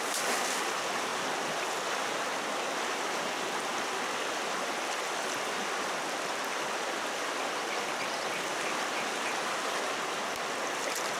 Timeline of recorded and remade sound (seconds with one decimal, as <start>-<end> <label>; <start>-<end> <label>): 0.0-11.2 recorded